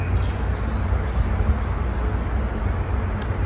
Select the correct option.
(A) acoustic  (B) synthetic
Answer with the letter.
A